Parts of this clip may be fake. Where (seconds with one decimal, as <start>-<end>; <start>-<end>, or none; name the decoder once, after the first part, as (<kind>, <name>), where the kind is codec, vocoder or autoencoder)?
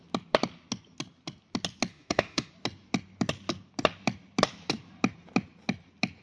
1.9-2.5 (autoencoder, DAC-VAE)